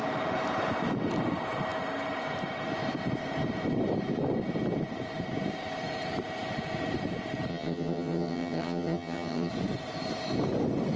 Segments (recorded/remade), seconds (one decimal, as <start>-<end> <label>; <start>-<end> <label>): 0.0-7.5 recorded; 7.5-9.5 remade; 9.5-11.0 recorded